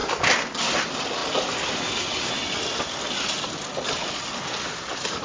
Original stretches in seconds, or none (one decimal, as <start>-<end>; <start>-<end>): 0.0-5.2